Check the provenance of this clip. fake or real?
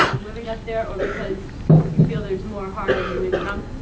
real